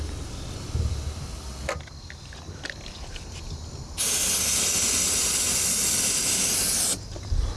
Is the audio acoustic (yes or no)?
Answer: yes